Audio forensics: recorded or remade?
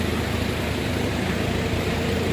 remade